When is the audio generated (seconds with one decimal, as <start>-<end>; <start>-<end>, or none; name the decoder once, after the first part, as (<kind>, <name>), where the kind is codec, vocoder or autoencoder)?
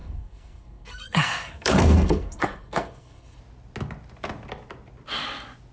0.0-3.4 (codec, SNAC)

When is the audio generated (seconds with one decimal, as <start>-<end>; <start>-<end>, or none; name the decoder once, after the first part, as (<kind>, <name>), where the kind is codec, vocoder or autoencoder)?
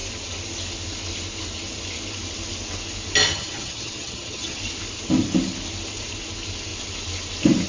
3.3-4.6 (vocoder, HiFi-GAN)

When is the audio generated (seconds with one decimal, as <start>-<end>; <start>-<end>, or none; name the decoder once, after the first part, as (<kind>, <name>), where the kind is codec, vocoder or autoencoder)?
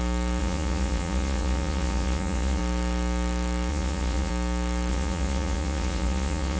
0.4-2.6 (vocoder, Vocos); 3.7-4.3; 4.9-6.6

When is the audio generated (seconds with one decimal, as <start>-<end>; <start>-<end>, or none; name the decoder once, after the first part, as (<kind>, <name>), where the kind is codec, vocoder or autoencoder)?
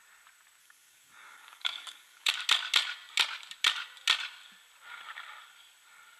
0.6-2.3 (codec, DAC)